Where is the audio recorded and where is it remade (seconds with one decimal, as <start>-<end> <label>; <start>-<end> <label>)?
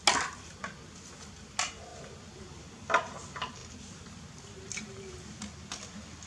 0.0-6.3 recorded